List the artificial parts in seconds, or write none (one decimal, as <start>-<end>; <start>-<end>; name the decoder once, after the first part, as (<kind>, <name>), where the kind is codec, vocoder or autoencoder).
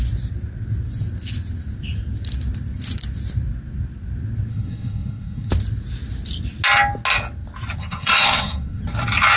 4.5-5.5 (codec, SNAC); 7.8-8.8